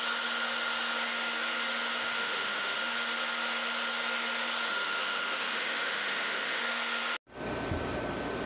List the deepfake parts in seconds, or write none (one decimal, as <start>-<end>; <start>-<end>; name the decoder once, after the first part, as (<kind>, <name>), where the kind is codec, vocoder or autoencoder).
2.2-2.8 (autoencoder, DAC-VAE); 4.7-6.6